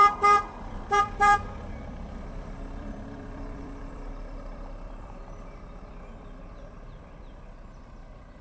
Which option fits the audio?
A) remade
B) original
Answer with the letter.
A